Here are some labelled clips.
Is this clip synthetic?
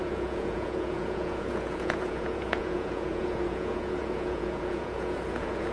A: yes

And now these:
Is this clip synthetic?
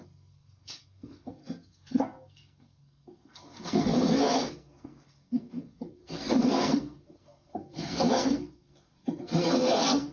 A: yes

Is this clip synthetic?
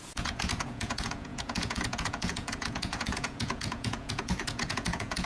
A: yes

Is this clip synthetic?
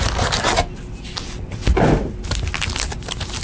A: no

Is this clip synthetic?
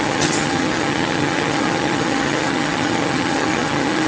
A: yes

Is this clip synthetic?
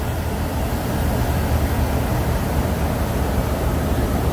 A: no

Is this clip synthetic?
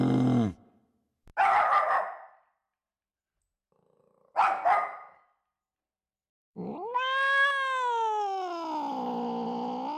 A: no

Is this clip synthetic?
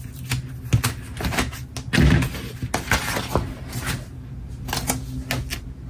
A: no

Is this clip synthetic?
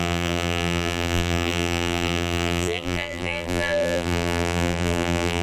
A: yes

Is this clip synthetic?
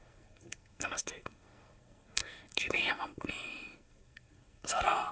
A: yes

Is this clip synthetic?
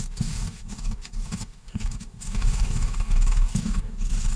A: yes